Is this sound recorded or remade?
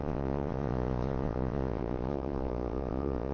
remade